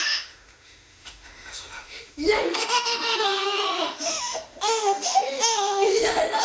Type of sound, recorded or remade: remade